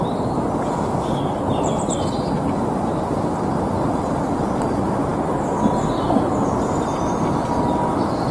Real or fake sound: real